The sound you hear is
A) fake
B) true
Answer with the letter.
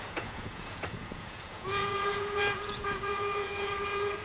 A